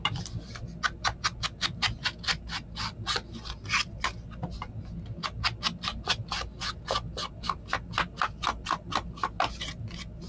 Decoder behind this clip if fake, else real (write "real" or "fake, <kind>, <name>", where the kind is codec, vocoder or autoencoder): real